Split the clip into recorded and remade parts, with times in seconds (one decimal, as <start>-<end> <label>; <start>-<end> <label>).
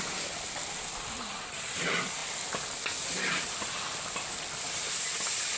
0.0-5.6 recorded